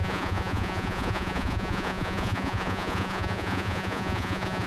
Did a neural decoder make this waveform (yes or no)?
yes